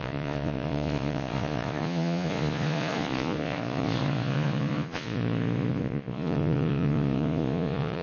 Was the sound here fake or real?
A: fake